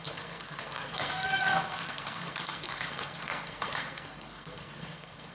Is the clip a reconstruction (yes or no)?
yes